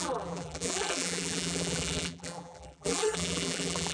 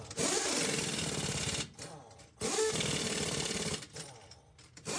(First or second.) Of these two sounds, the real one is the second